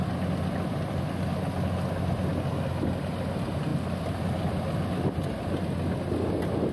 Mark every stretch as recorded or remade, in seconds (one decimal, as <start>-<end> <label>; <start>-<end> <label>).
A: 0.0-6.7 recorded